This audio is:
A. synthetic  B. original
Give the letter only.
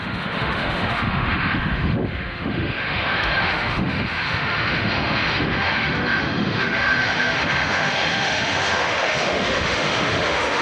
A